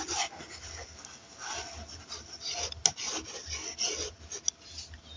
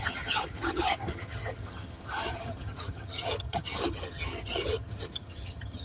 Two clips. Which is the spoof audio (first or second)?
second